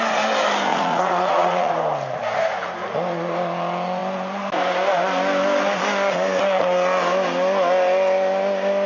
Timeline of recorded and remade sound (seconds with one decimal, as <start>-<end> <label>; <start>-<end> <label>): 0.0-0.7 recorded; 0.7-1.7 remade; 1.7-8.9 recorded